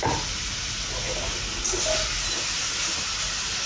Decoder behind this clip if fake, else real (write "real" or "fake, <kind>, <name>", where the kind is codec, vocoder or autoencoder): real